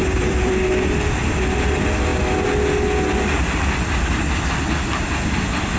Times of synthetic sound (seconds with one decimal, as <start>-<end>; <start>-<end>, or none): 0.0-0.5